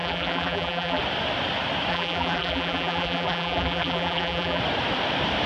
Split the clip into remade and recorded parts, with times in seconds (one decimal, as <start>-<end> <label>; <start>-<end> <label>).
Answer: 0.0-1.0 remade; 1.0-1.9 recorded; 1.9-4.6 remade; 4.6-5.5 recorded